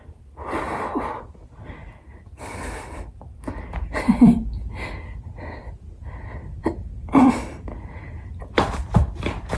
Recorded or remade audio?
recorded